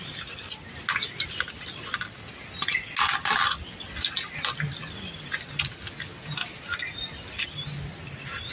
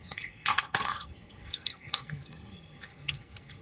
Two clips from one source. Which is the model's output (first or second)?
second